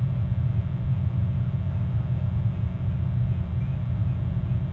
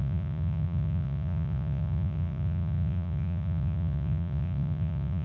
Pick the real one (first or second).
first